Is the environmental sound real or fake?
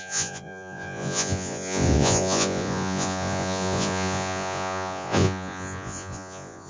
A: fake